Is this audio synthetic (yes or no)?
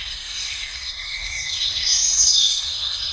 yes